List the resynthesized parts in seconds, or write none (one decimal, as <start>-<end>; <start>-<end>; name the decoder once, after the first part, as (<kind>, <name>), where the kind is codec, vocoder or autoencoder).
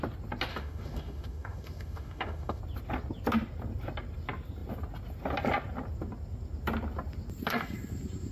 0.5-2.6 (autoencoder, DAC-VAE)